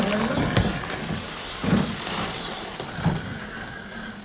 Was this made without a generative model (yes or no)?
yes